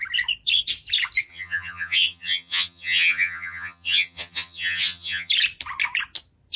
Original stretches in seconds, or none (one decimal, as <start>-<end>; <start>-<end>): 0.0-1.3; 5.3-6.6